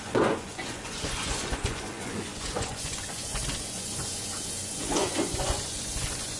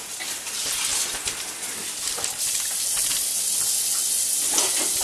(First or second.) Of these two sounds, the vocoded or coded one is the first